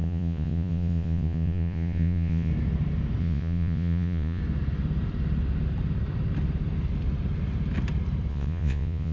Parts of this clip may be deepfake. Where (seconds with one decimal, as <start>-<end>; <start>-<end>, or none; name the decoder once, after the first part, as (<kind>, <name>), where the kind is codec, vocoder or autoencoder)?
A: 0.0-2.5 (vocoder, Vocos); 3.2-4.4; 8.3-9.1